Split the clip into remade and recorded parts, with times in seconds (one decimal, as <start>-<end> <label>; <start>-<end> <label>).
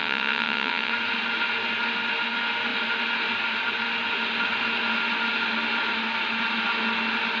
0.0-0.9 remade; 0.9-7.4 recorded